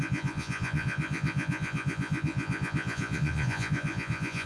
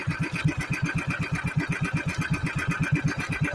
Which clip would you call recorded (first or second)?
second